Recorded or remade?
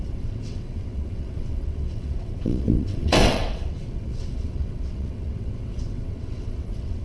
remade